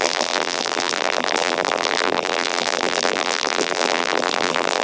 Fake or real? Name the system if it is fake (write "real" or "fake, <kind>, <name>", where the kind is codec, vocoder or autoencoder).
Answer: fake, vocoder, BigVGAN v2